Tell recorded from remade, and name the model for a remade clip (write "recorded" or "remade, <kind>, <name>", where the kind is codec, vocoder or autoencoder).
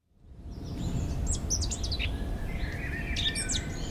recorded